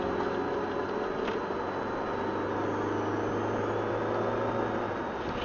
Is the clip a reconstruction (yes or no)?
no